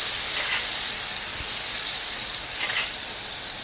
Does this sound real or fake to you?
real